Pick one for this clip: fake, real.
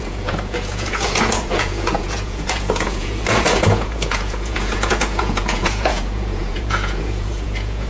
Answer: fake